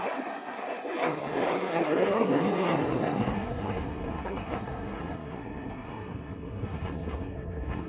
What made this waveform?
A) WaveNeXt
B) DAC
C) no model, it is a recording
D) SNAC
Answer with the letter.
D